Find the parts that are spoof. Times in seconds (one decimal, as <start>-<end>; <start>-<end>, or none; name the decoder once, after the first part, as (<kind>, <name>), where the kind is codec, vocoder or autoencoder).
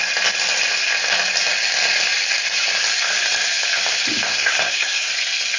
4.3-5.1 (codec, SNAC)